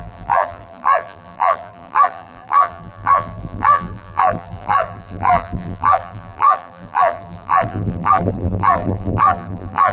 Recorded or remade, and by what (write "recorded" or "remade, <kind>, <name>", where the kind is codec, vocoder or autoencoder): remade, vocoder, BigVGAN v2